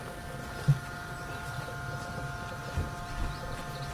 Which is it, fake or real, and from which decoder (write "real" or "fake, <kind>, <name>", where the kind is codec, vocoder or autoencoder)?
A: real